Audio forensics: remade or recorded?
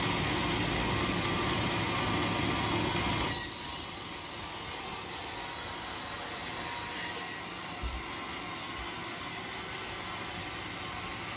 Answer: recorded